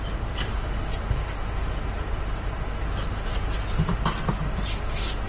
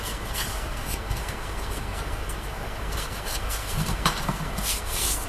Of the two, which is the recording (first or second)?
first